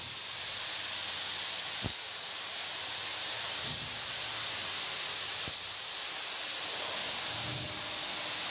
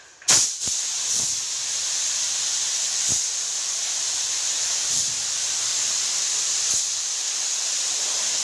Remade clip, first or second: second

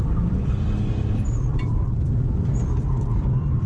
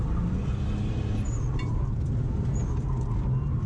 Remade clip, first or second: first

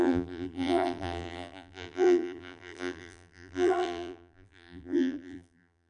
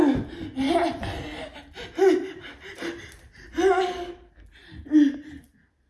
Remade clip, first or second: first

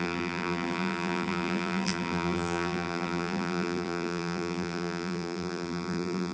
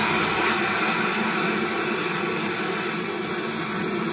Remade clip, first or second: first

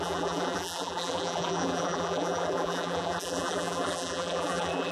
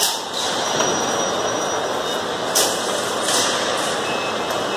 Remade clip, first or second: first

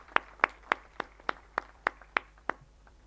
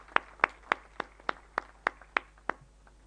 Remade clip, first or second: first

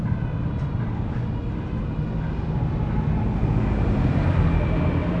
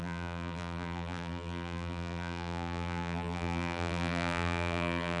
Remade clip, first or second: second